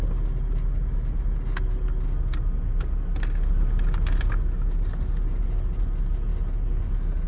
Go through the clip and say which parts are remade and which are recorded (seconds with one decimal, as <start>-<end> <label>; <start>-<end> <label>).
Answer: 0.0-7.3 recorded